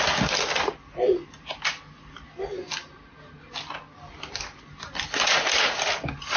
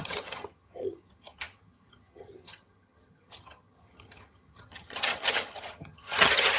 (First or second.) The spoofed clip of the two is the second